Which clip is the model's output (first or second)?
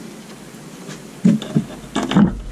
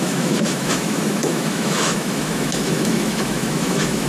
second